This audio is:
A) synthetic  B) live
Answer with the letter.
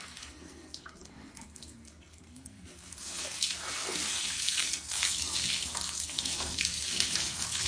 A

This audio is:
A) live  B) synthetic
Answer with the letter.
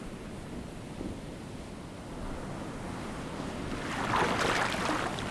A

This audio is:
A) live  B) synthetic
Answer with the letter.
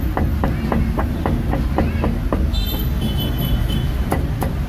A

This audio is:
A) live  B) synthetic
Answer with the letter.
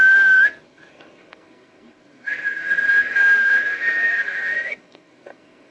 B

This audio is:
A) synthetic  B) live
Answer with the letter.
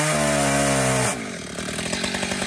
B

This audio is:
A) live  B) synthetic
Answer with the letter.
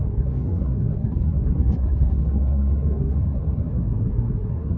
B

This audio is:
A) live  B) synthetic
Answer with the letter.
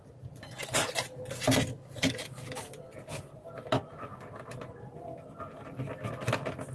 A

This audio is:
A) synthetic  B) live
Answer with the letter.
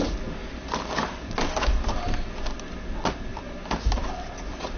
B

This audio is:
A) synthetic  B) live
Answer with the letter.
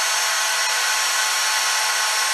B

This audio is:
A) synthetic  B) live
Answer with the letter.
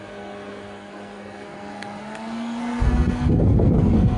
A